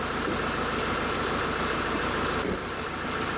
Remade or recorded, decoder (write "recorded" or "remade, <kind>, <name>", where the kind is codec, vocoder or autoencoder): recorded